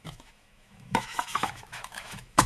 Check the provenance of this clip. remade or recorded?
remade